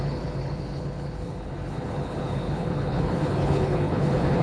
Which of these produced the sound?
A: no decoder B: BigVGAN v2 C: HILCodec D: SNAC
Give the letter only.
C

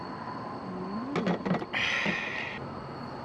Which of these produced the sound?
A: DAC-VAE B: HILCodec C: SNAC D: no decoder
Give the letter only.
D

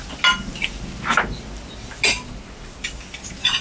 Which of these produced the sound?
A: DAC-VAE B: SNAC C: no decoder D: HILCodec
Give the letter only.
C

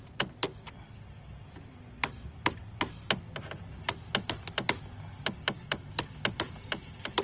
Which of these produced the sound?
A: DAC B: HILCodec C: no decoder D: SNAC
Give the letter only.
C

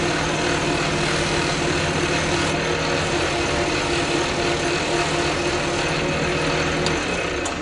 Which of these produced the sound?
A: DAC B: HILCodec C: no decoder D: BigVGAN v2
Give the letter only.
C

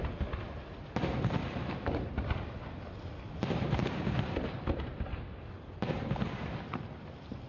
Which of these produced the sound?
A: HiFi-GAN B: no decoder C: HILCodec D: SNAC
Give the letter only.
B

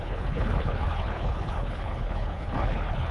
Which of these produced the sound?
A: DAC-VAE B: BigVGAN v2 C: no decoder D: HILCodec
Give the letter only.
D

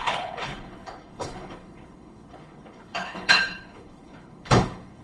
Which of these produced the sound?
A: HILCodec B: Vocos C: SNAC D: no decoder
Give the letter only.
A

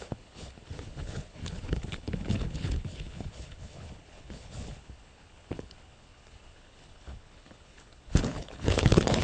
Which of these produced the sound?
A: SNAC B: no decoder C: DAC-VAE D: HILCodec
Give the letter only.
D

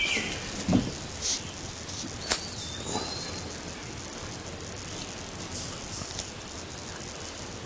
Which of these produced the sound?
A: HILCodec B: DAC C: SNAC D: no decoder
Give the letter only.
D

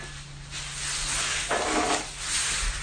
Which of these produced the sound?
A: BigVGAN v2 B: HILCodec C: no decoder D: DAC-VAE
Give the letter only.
C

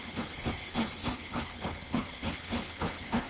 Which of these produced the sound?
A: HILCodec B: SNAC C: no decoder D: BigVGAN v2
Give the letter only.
A